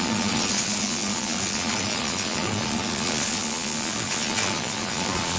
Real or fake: fake